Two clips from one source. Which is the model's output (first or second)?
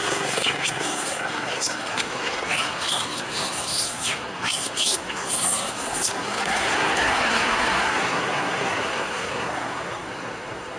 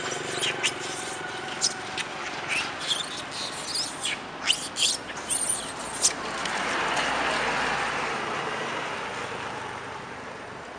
first